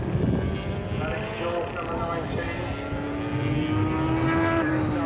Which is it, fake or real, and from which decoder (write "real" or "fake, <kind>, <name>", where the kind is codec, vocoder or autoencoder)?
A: real